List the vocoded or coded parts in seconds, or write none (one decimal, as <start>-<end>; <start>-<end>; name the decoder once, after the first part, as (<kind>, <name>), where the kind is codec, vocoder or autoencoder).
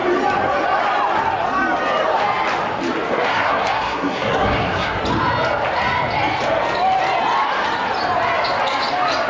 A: 3.1-5.0 (codec, SNAC)